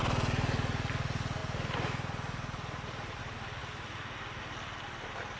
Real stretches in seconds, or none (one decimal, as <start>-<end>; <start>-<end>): 0.0-5.4